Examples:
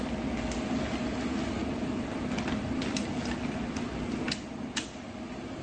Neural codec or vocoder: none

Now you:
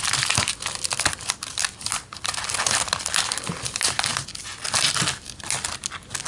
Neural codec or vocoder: none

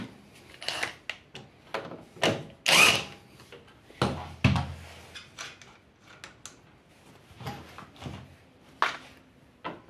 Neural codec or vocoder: none